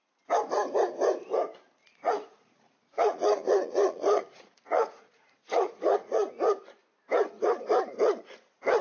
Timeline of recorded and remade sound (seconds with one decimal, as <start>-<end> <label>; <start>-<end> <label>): 0.0-1.8 recorded; 1.8-6.3 remade; 6.3-8.8 recorded